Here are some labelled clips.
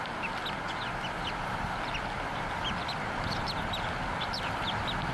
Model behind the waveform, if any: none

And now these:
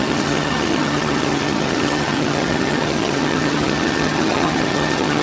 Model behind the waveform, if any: vocoder, HiFi-GAN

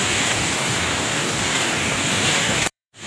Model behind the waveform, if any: codec, DAC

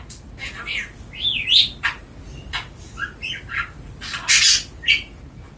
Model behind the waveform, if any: none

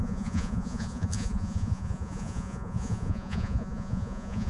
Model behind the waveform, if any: vocoder, Vocos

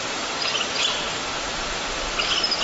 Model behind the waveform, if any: none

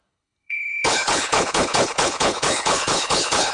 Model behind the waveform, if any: codec, HILCodec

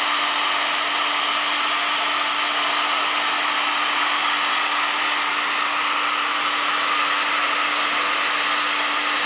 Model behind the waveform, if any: none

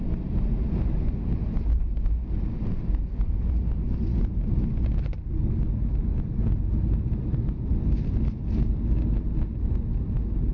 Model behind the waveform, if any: none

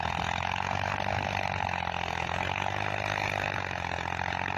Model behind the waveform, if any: none